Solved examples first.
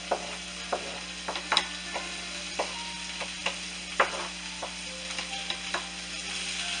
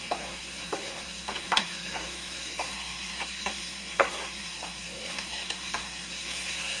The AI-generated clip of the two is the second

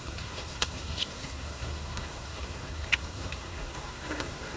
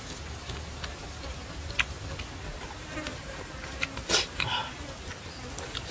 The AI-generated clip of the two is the first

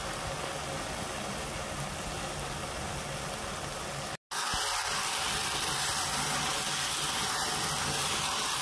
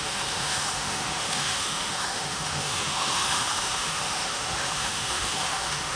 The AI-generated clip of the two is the second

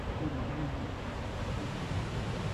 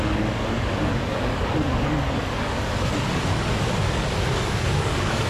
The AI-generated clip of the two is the second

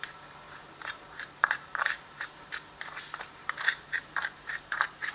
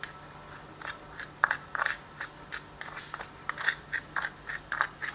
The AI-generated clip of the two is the first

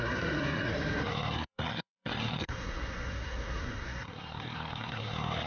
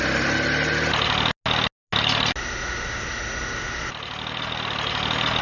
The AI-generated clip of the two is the first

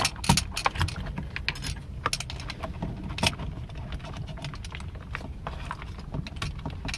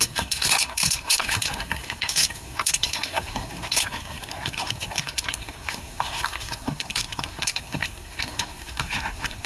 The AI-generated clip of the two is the second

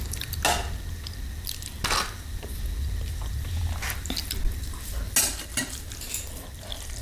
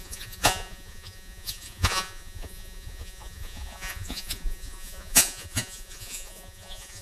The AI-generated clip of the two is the second